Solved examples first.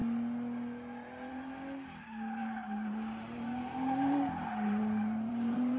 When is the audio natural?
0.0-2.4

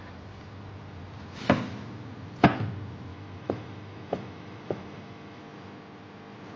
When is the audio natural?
0.0-3.1; 5.4-6.6

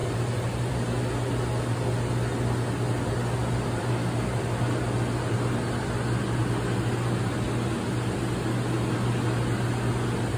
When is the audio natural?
0.7-10.4

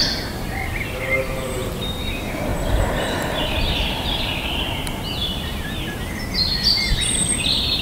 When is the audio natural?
0.0-7.8

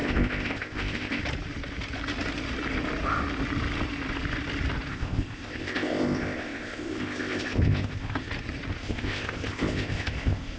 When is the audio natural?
1.2-4.9; 8.3-8.8